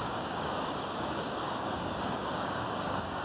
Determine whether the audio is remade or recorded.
remade